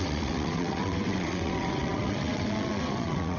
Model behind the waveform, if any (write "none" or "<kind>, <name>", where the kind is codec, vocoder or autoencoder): vocoder, WaveNeXt